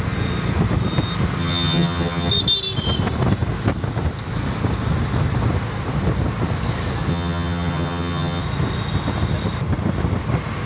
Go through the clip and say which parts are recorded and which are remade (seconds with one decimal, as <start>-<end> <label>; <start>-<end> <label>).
0.0-1.4 recorded; 1.4-2.3 remade; 2.3-7.1 recorded; 7.1-8.4 remade; 8.4-10.7 recorded